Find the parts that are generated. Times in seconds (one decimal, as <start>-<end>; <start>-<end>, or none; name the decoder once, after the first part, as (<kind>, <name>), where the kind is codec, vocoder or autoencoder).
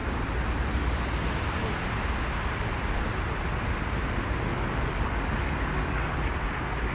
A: 4.5-6.3 (codec, DAC)